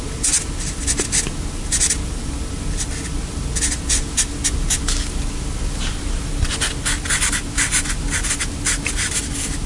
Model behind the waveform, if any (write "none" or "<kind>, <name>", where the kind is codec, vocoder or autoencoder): none